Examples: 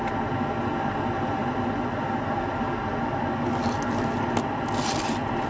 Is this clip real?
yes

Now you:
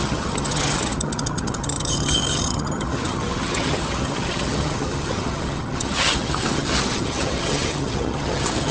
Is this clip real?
no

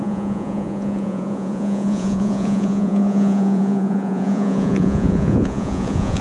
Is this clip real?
no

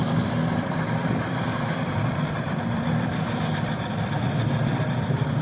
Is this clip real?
no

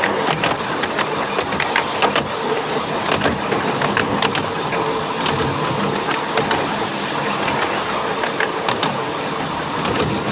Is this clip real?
yes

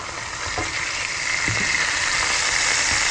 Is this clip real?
yes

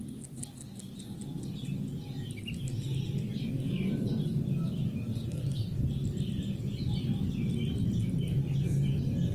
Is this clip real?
yes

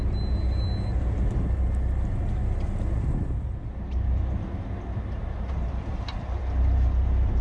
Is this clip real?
yes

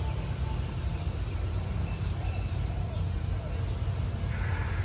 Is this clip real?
yes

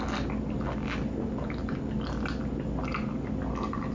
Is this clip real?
yes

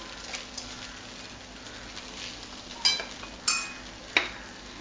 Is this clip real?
yes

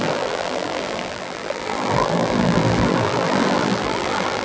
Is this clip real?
no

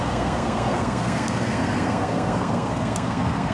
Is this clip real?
no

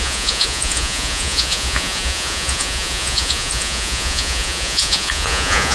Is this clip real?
no